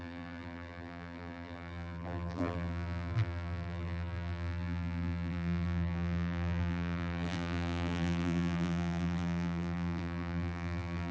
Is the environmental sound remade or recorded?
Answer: remade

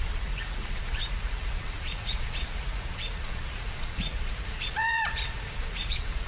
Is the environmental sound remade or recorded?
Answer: remade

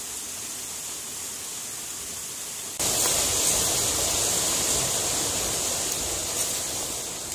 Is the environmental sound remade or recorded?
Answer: recorded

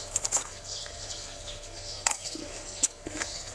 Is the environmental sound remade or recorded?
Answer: remade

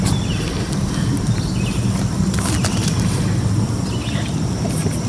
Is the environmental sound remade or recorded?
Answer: recorded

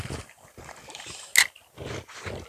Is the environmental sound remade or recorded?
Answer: recorded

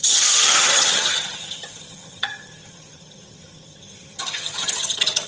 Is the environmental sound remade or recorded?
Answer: remade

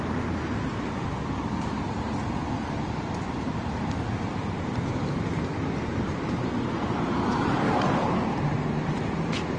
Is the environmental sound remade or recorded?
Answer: recorded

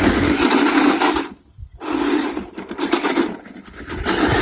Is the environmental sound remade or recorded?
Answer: recorded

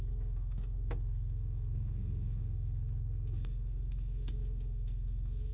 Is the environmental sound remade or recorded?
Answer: remade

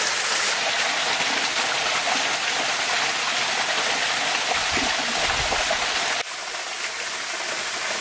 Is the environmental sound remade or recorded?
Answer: recorded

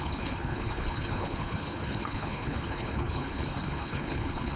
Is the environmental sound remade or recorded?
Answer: remade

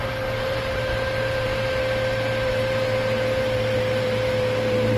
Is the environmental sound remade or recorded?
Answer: recorded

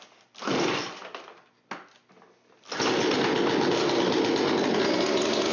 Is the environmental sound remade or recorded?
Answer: recorded